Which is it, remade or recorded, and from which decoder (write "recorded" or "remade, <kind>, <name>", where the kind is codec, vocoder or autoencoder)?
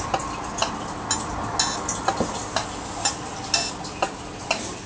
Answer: recorded